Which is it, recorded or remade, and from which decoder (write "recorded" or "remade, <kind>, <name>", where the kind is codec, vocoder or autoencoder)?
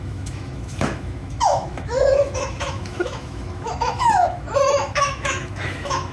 remade, autoencoder, DAC-VAE